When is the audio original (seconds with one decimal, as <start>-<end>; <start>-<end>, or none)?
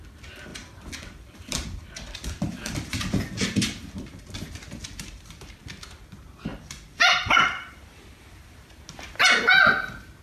0.0-0.5; 5.6-6.5; 8.7-10.2